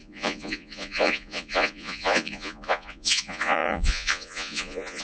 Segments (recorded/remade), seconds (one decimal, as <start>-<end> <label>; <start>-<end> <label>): 0.0-5.0 remade

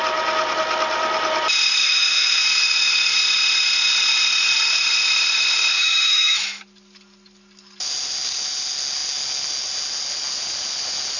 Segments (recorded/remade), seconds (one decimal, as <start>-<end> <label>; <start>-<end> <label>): 0.0-1.8 recorded; 1.8-2.4 remade; 2.4-5.7 recorded; 5.7-6.6 remade; 6.6-11.2 recorded